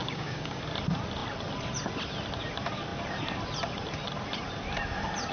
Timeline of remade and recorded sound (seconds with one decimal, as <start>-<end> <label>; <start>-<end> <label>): 0.0-0.6 remade; 0.6-5.3 recorded